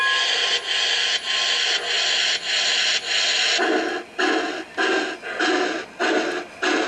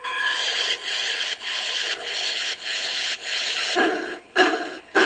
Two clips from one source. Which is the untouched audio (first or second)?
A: first